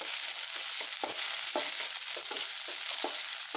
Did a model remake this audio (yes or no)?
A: no